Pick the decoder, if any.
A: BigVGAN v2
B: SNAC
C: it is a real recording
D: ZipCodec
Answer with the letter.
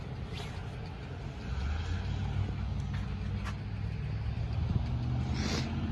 C